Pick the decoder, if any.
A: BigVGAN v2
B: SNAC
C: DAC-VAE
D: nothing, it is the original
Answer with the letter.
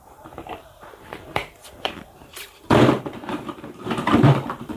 A